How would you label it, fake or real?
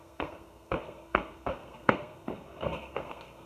fake